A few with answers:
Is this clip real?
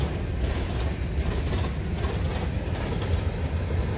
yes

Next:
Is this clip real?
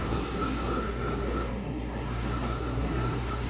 no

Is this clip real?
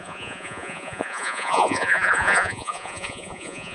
no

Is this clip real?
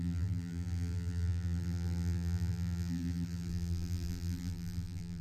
no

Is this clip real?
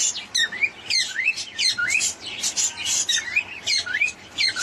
no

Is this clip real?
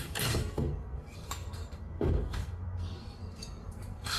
no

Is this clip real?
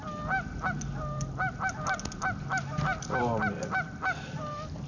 yes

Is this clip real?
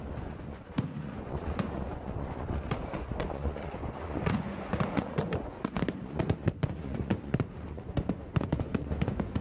no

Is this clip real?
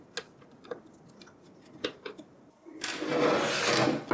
yes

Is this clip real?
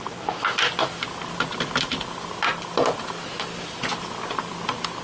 yes